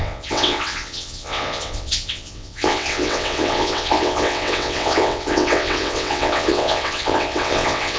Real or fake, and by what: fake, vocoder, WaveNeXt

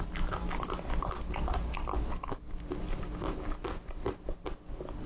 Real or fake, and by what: real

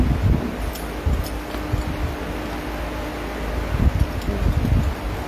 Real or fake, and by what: real